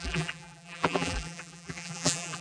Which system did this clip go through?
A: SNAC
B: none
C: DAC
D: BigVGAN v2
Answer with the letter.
D